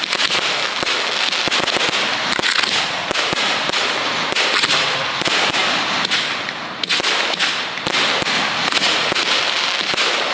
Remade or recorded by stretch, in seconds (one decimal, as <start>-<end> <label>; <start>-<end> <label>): 0.0-10.3 recorded